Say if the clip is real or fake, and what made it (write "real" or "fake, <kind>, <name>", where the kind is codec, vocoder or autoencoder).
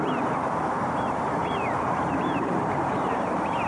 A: fake, vocoder, BigVGAN v2